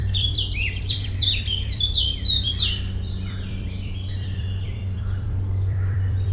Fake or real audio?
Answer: fake